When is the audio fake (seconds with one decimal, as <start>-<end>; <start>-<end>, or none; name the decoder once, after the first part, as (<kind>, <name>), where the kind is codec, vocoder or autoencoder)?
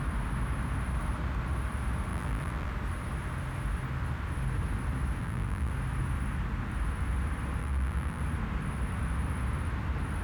2.1-2.7 (vocoder, BigVGAN v2); 5.2-5.7; 7.6-8.2